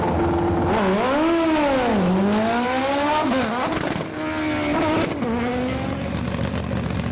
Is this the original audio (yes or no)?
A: yes